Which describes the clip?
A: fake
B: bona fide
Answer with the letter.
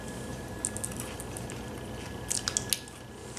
B